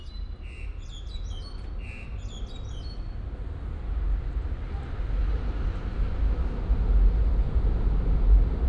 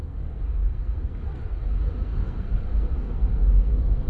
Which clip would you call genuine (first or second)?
first